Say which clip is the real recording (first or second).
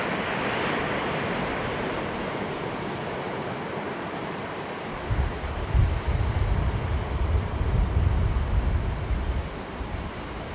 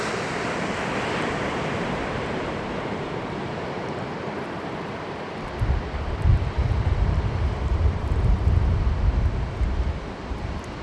first